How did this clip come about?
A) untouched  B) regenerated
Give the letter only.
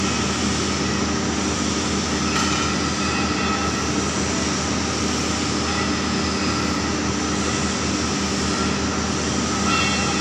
A